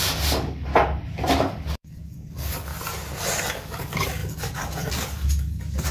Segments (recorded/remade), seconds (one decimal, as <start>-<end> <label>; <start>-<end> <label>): 0.0-0.7 remade; 0.7-1.4 recorded; 1.4-2.7 remade; 2.7-3.5 recorded; 3.5-5.9 remade